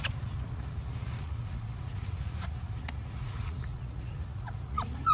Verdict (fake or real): fake